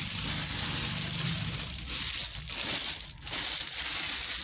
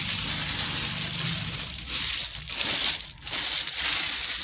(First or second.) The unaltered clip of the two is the first